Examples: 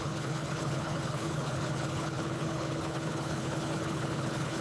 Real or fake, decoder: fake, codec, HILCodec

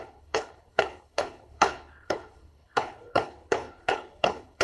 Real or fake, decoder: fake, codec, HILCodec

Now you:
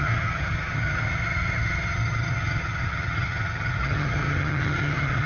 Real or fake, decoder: fake, vocoder, HiFi-GAN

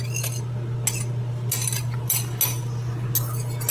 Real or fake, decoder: real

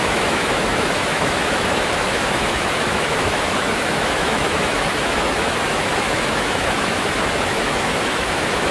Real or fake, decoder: fake, autoencoder, DAC-VAE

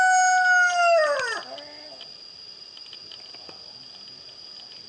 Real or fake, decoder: real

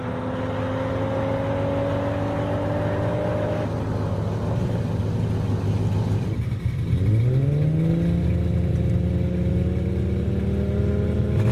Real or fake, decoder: real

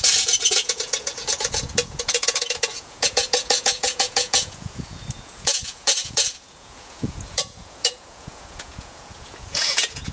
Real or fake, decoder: fake, vocoder, Vocos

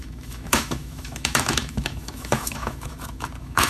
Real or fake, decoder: fake, autoencoder, DAC-VAE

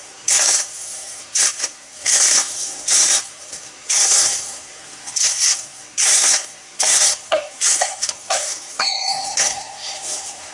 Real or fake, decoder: fake, codec, SNAC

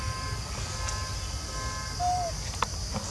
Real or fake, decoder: real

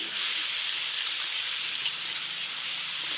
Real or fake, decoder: real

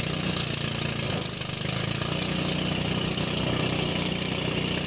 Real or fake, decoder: real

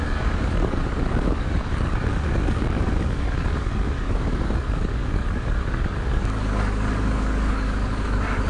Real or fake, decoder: fake, codec, DAC